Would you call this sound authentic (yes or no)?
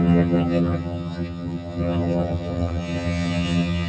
no